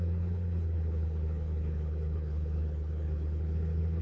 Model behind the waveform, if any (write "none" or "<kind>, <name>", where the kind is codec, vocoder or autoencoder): codec, HILCodec